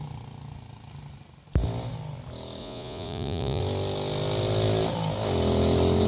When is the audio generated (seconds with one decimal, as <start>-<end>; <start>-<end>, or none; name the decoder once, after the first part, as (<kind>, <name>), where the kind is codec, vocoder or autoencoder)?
2.6-3.6 (vocoder, Vocos)